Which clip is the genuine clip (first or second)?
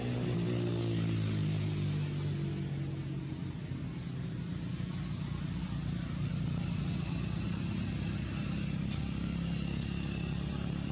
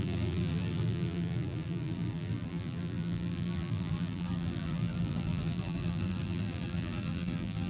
first